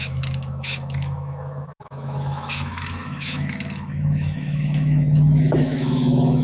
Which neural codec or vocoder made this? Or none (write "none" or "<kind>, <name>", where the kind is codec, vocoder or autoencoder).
autoencoder, DAC-VAE